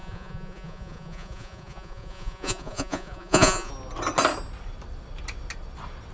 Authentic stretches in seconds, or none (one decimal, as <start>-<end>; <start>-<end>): 3.7-6.1